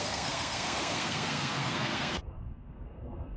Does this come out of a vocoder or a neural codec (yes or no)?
yes